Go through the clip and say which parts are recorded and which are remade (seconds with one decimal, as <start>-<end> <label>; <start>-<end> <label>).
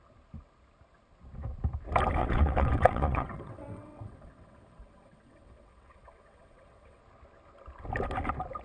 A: 0.0-2.2 recorded; 2.2-7.0 remade; 7.0-8.6 recorded